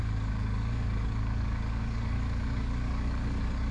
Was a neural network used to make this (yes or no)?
yes